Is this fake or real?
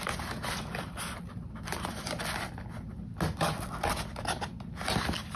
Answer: real